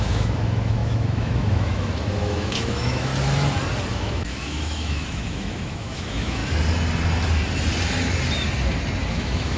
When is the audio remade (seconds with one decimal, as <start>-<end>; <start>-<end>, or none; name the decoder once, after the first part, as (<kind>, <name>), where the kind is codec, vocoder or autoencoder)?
0.0-3.1 (autoencoder, DAC-VAE); 3.9-6.4; 9.1-9.6